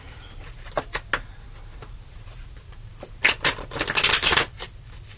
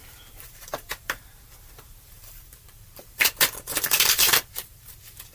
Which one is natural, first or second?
first